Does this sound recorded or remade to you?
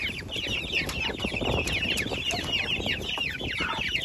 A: remade